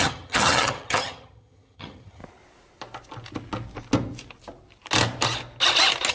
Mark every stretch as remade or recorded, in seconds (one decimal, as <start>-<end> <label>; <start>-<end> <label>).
0.0-2.2 remade; 2.2-6.1 recorded